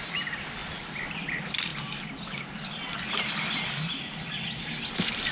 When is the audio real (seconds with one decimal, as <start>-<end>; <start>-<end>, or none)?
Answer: 0.0-5.3